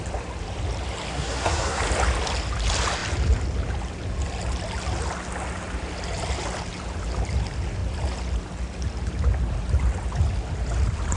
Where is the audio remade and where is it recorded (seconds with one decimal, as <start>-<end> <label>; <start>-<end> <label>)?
0.0-1.1 recorded; 1.1-1.8 remade; 1.8-11.2 recorded